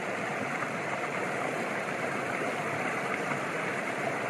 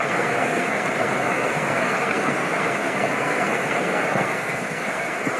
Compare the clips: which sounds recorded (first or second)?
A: first